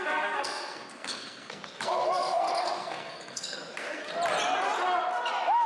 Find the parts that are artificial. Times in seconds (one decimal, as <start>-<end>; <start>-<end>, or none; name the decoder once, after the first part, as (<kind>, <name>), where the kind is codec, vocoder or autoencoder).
0.0-4.1 (codec, SNAC)